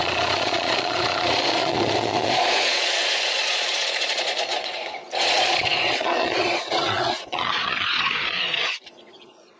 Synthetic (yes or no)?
yes